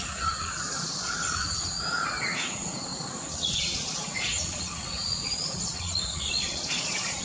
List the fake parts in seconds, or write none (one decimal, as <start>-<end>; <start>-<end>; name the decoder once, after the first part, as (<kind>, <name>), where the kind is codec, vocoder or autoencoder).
0.0-7.2 (vocoder, Vocos)